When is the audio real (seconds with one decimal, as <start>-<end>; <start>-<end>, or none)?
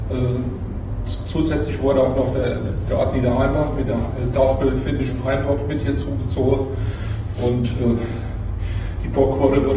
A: 0.0-2.4; 3.1-3.9; 4.6-6.5; 7.9-9.8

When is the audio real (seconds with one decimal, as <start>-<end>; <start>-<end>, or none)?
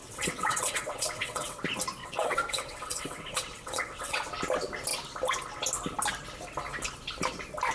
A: 1.6-2.0; 4.3-7.7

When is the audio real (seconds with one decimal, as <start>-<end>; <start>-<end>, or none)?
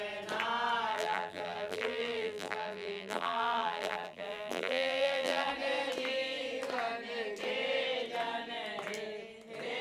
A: 0.0-0.9; 5.5-9.8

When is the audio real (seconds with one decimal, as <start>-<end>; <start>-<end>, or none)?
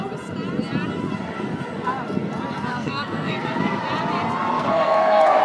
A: 0.0-2.7; 3.8-4.5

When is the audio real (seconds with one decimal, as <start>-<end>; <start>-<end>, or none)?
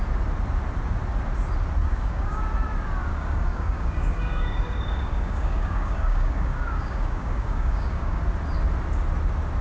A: 0.0-1.8; 2.4-3.1; 8.2-9.6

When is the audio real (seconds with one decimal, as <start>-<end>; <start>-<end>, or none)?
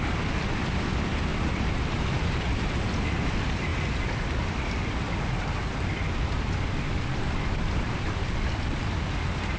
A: 0.0-1.3; 2.6-9.6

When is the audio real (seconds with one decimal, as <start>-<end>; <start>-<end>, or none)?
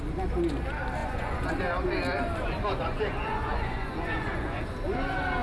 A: 0.0-1.0; 1.5-2.6; 4.6-5.4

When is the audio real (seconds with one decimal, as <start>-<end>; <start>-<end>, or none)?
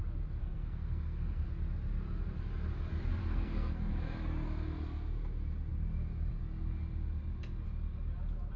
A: 0.0-0.4; 1.5-3.2; 3.9-8.6